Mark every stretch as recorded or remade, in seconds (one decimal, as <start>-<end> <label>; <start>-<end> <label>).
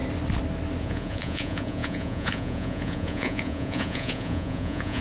0.0-0.8 recorded; 0.8-5.0 remade